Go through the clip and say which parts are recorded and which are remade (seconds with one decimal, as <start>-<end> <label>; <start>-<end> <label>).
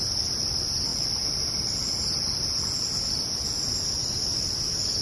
0.0-0.9 remade; 0.9-3.3 recorded; 3.3-4.0 remade; 4.0-5.0 recorded